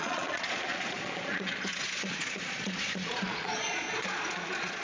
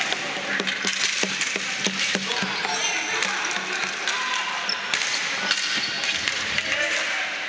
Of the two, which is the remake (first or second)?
first